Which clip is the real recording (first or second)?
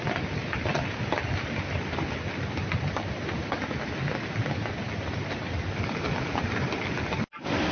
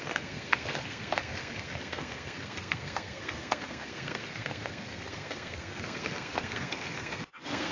first